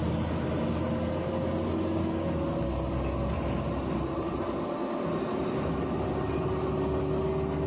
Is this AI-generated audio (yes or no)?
no